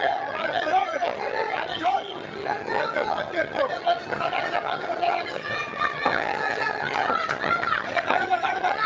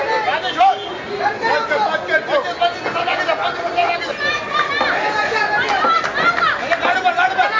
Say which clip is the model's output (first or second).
first